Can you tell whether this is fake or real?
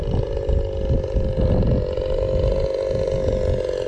real